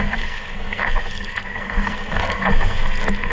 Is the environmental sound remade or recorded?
remade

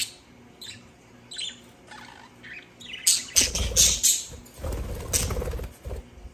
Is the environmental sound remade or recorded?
recorded